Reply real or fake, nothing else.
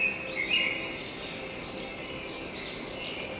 real